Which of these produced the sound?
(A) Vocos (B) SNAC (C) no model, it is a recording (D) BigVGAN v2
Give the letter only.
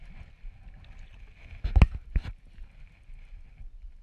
C